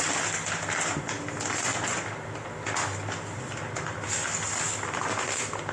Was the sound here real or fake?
real